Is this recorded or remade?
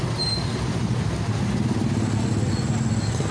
recorded